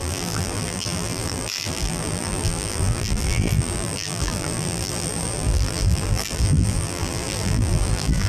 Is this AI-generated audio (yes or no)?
yes